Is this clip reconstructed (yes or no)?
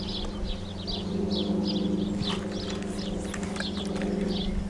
no